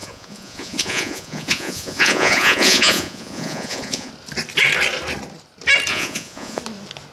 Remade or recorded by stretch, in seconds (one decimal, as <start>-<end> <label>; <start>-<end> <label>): 0.0-4.1 remade; 4.1-5.9 recorded; 5.9-6.6 remade; 6.6-7.1 recorded